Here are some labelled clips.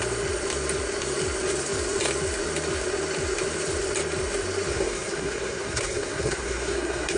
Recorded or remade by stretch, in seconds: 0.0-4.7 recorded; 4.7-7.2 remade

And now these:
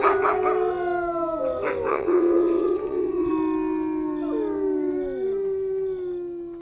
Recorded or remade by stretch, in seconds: 0.0-1.9 recorded; 1.9-3.3 remade; 3.3-6.6 recorded

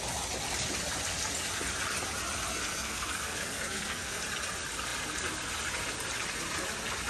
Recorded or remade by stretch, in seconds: 0.0-2.5 recorded; 2.5-4.2 remade; 4.2-7.1 recorded

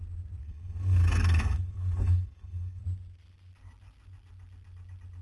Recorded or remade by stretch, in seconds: 0.0-0.4 recorded; 0.4-2.8 remade; 2.8-5.2 recorded

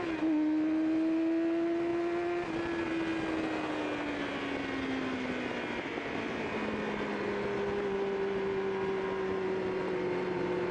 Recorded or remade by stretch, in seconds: 0.0-10.7 recorded

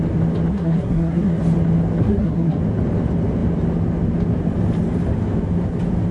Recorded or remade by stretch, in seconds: 0.0-0.5 recorded; 0.5-1.4 remade; 1.4-2.0 recorded; 2.0-2.6 remade; 2.6-6.1 recorded